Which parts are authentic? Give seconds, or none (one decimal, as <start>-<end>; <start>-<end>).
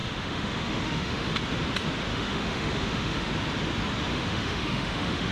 1.3-2.1; 3.3-4.1